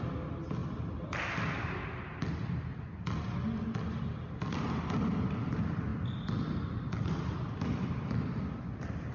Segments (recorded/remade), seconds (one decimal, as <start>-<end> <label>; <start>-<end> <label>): 0.0-9.1 recorded